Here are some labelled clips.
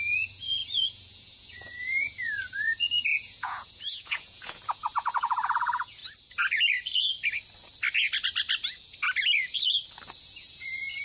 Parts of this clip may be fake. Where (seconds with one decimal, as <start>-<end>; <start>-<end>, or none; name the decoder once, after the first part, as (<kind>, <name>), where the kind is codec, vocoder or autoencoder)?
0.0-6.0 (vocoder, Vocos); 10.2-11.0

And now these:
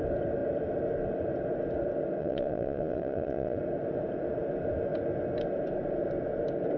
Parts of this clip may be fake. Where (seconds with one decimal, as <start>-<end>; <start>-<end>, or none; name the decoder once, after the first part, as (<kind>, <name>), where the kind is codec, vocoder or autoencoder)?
2.2-3.6 (vocoder, Vocos)

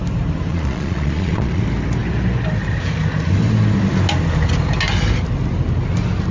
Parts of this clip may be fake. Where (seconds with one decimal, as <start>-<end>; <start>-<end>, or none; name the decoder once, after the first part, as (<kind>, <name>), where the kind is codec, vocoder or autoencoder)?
0.5-1.6 (vocoder, Vocos)

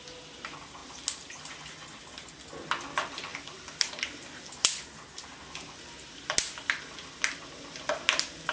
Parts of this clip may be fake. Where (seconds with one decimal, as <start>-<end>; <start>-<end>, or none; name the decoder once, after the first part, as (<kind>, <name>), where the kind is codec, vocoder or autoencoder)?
none

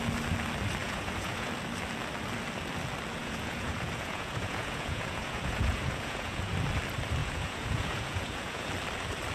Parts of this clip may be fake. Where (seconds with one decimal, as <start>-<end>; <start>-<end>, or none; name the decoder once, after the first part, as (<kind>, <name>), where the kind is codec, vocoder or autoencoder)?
0.8-1.5 (vocoder, Vocos); 3.2-6.5; 7.2-8.7